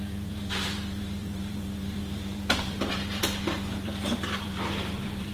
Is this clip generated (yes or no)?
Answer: yes